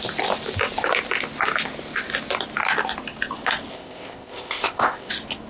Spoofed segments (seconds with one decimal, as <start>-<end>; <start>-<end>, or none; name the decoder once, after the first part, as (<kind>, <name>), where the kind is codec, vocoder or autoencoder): 3.7-5.1 (codec, ZipCodec)